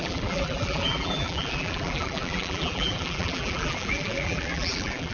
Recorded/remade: remade